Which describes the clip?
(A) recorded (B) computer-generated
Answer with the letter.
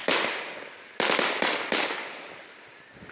A